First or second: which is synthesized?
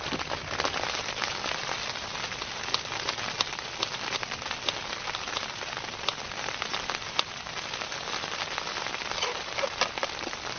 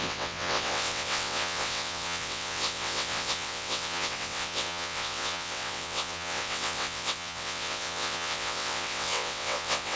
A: second